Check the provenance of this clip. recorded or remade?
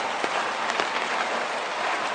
recorded